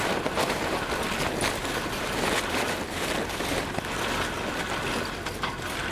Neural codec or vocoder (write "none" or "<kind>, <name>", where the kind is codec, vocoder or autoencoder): vocoder, BigVGAN v2